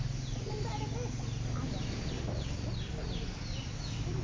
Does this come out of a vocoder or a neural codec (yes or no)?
no